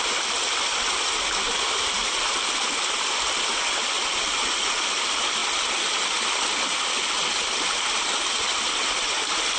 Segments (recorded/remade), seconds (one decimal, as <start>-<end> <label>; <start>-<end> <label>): 0.0-9.6 recorded

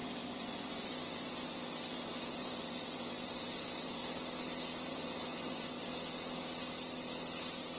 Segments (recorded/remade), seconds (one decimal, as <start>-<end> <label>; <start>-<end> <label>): 0.0-4.0 remade; 4.0-4.9 recorded; 4.9-5.9 remade; 5.9-7.8 recorded